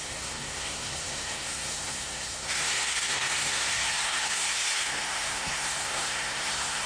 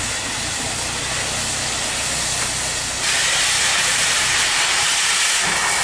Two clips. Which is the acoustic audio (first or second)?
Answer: second